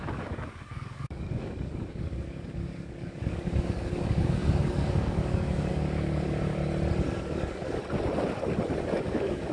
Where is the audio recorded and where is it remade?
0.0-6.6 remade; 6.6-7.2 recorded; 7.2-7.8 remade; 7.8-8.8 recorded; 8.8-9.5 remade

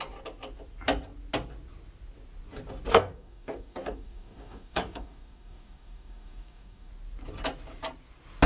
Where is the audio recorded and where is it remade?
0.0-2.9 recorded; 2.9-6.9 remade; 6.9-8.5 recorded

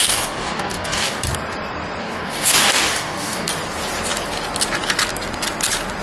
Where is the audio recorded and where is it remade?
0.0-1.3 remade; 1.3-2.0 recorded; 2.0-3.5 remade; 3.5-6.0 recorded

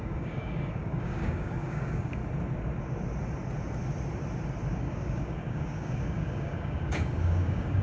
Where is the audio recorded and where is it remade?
0.0-2.2 remade; 2.2-4.7 recorded; 4.7-7.8 remade

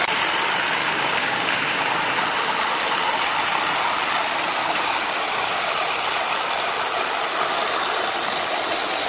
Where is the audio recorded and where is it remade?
0.0-0.8 recorded; 0.8-1.9 remade; 1.9-4.6 recorded; 4.6-5.7 remade; 5.7-9.1 recorded

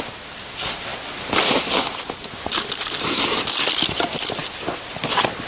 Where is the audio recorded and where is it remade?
0.0-5.5 recorded